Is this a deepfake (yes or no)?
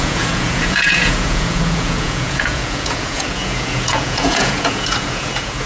yes